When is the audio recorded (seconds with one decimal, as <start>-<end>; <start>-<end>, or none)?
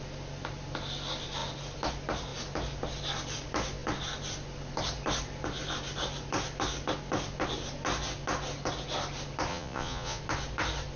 0.0-9.5; 10.2-11.0